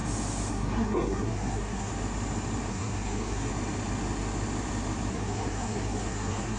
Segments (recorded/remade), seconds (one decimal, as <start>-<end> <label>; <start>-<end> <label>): 0.0-0.5 recorded; 0.5-1.9 remade; 1.9-2.7 recorded; 2.7-3.5 remade; 3.5-5.1 recorded; 5.1-6.6 remade